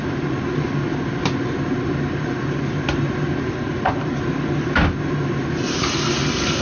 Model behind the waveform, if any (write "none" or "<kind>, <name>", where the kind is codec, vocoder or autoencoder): none